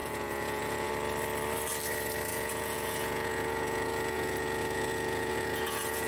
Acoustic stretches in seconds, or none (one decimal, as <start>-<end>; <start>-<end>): 0.9-2.3